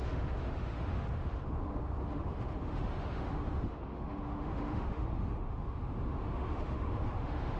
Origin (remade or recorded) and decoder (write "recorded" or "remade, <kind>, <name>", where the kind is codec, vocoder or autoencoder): remade, autoencoder, DAC-VAE